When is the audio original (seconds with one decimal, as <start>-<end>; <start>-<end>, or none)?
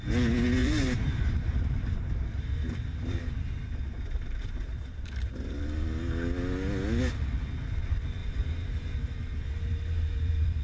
0.0-0.6; 5.3-8.2